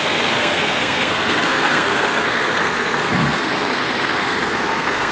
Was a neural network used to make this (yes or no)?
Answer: yes